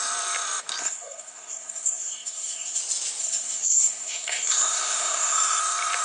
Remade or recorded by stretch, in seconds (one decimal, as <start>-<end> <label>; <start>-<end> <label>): 0.0-0.8 recorded; 0.8-2.8 remade; 2.8-3.2 recorded; 3.2-5.6 remade; 5.6-6.0 recorded